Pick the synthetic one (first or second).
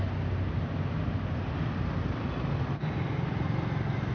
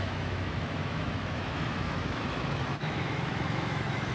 second